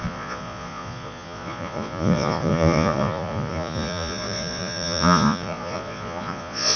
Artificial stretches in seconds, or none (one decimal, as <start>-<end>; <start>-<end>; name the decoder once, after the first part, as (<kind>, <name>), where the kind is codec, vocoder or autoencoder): 0.0-6.8 (vocoder, Vocos)